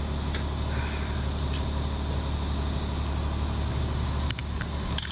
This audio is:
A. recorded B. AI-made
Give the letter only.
A